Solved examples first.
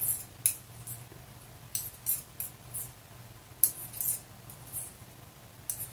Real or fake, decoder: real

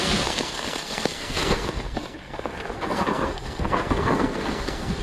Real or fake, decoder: fake, codec, SNAC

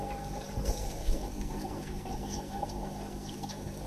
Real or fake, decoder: fake, codec, SNAC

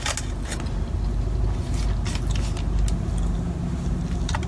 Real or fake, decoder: real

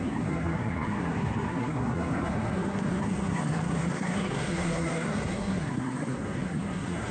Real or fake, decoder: fake, codec, SNAC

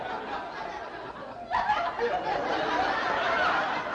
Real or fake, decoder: real